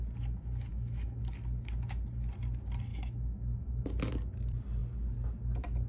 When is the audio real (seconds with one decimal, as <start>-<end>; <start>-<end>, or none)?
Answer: 0.0-0.7; 1.2-2.9; 3.8-5.9